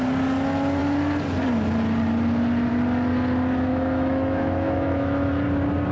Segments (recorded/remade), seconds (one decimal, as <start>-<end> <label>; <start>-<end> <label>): 0.0-3.7 recorded; 3.7-5.3 remade; 5.3-5.9 recorded